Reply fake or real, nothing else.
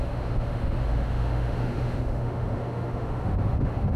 fake